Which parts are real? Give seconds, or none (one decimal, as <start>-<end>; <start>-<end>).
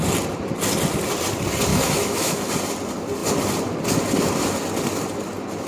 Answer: 0.0-1.7; 2.5-5.7